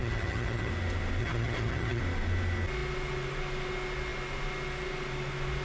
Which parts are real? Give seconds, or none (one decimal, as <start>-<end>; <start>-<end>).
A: 0.7-1.2; 2.0-5.6